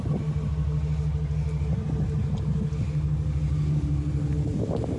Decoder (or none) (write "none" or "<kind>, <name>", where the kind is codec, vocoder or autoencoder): none